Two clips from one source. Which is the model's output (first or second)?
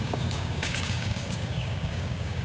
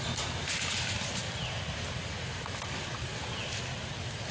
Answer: first